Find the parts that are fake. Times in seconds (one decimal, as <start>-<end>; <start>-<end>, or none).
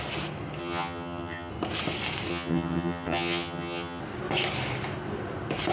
0.6-1.5; 2.3-4.0